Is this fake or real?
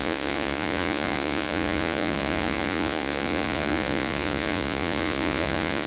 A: fake